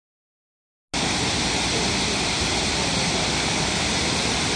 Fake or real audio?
real